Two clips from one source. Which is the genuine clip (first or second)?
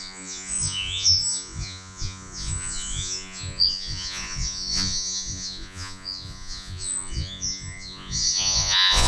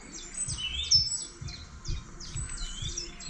second